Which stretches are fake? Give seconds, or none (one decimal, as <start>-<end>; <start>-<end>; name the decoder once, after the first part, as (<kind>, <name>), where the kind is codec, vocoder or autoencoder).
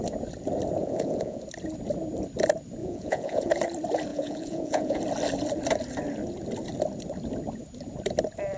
0.8-1.4 (vocoder, Vocos); 2.8-3.5; 4.1-5.0